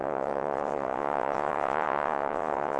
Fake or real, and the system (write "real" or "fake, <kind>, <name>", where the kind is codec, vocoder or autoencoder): fake, vocoder, WaveNeXt